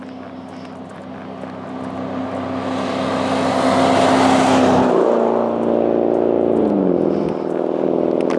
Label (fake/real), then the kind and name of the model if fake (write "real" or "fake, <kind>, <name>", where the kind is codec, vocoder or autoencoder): real